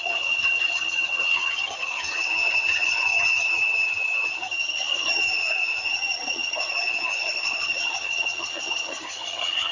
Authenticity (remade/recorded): remade